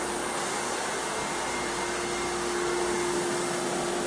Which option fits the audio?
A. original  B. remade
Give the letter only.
A